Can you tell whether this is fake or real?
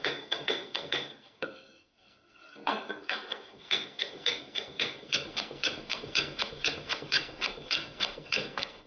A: fake